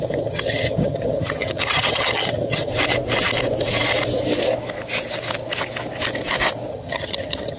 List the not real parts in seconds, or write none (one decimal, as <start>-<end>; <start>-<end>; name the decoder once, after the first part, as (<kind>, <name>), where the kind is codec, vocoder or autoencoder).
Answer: 0.0-2.7 (vocoder, HiFi-GAN); 6.7-7.6

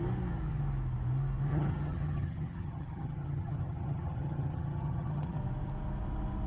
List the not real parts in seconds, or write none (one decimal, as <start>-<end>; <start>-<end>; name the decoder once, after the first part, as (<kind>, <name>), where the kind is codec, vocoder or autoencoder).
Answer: 1.5-5.4 (vocoder, HiFi-GAN)

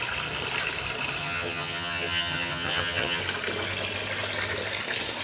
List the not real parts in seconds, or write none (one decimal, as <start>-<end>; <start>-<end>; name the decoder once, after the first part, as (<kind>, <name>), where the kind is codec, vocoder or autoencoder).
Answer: 1.2-3.2 (vocoder, HiFi-GAN)

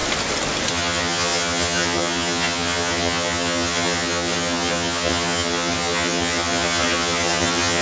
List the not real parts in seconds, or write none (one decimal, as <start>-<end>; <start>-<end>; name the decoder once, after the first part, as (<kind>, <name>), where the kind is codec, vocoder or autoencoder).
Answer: 0.7-7.8 (vocoder, HiFi-GAN)